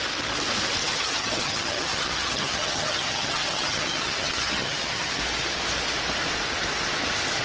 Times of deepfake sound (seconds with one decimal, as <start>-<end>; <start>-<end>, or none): 0.8-5.2